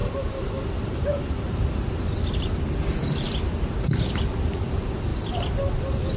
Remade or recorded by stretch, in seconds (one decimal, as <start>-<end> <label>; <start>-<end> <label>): 0.0-6.2 recorded